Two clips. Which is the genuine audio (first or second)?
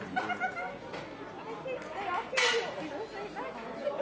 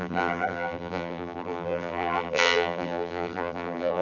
first